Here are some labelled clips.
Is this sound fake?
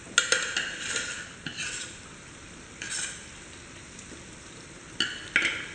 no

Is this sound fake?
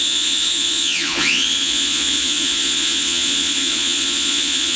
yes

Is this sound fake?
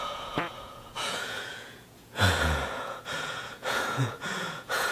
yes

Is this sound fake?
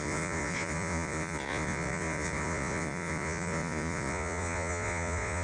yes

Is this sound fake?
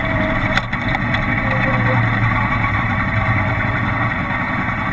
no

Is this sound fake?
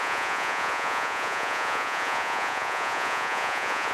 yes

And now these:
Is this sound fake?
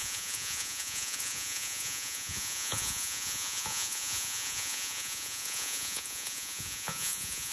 yes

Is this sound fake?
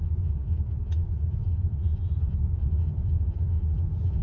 yes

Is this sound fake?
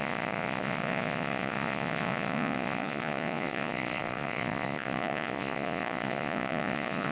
yes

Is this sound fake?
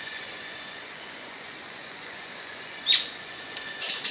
yes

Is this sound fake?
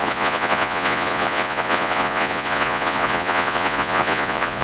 yes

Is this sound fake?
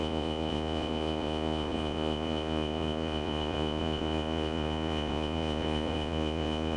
yes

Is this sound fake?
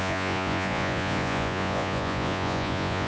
yes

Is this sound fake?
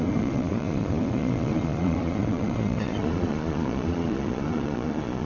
yes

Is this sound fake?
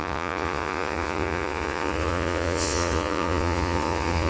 yes